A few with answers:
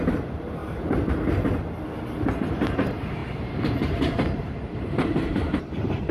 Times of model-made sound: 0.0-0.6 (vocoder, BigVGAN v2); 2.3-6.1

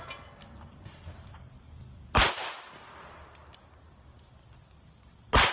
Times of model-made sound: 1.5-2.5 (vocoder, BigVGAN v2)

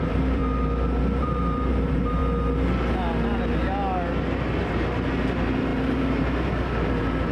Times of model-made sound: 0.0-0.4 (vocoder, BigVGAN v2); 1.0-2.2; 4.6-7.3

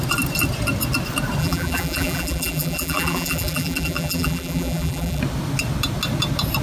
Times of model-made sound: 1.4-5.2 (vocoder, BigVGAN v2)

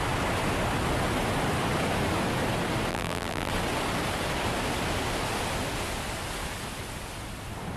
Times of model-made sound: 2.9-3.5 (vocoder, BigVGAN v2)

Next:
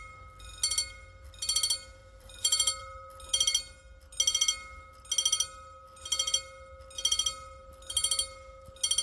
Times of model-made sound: 2.0-3.1 (vocoder, BigVGAN v2)

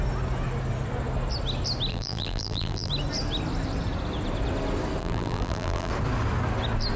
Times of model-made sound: 1.9-2.9 (vocoder, BigVGAN v2); 5.0-5.9

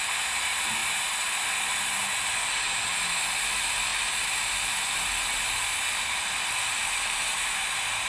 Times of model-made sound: 0.8-1.8 (vocoder, BigVGAN v2)